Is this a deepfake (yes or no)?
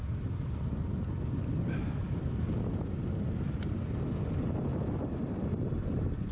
no